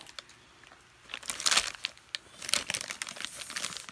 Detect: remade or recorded recorded